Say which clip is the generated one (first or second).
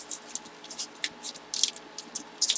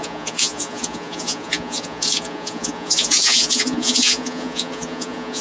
second